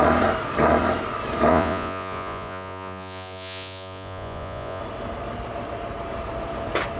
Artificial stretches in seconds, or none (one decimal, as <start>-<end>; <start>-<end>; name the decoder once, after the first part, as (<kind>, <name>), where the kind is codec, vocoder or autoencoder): 1.5-4.8 (vocoder, Vocos)